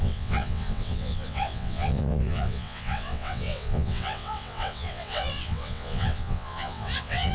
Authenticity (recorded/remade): remade